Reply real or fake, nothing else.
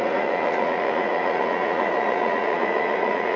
fake